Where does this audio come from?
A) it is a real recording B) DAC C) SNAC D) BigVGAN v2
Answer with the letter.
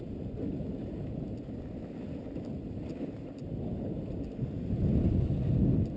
A